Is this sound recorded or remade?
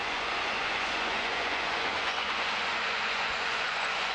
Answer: remade